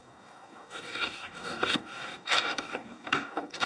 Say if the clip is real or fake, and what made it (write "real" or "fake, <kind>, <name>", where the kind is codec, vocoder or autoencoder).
fake, codec, DAC